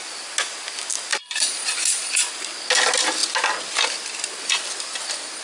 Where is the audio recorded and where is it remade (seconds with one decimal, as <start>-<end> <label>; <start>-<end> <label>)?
0.0-1.1 recorded; 1.1-2.3 remade; 2.3-5.4 recorded

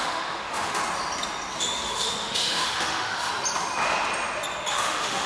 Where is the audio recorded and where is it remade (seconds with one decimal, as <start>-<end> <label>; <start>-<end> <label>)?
0.0-0.8 remade; 0.8-1.6 recorded; 1.6-3.3 remade; 3.3-4.7 recorded; 4.7-5.3 remade

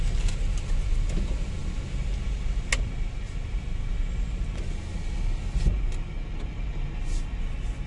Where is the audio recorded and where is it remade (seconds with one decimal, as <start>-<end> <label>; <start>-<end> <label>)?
0.0-7.9 recorded